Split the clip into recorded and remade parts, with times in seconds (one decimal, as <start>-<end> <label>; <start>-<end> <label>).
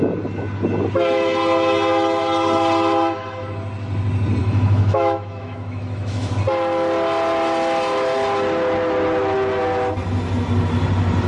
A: 0.0-4.4 recorded; 4.4-6.3 remade; 6.3-11.3 recorded